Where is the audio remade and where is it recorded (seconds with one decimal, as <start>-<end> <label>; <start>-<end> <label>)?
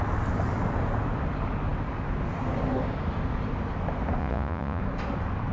0.0-4.2 recorded; 4.2-4.8 remade; 4.8-5.5 recorded